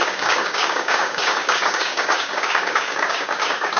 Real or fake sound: fake